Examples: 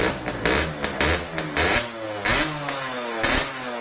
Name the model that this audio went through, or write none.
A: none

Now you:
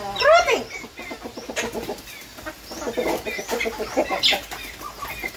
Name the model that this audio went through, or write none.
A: none